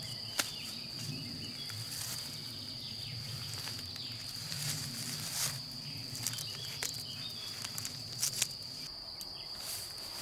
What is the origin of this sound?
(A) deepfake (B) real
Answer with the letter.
B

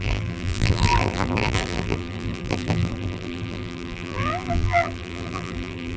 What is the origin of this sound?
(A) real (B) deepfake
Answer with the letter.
B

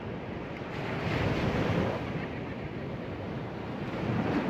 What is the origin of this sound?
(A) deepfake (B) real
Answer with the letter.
B